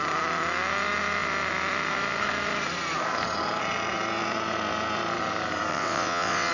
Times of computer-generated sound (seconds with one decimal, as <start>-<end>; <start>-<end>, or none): 5.7-6.5